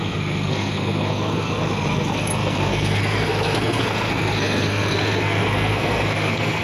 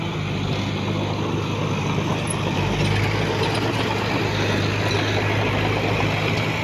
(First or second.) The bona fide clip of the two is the second